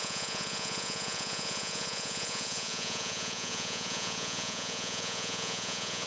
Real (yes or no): no